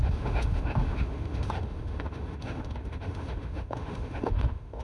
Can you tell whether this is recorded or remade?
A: remade